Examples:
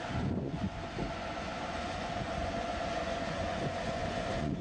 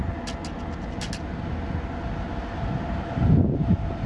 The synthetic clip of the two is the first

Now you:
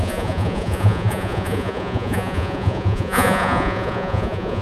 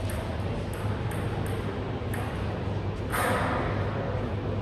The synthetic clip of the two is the first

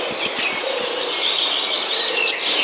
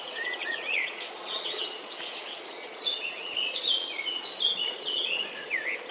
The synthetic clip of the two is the second